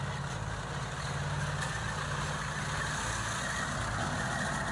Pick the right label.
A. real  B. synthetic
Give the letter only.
A